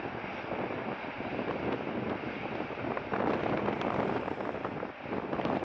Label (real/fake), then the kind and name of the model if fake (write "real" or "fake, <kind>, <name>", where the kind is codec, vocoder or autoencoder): real